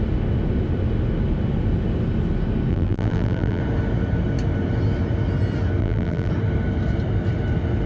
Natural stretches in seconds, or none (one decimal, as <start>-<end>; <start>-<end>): 0.0-2.7; 3.6-5.8; 6.3-7.9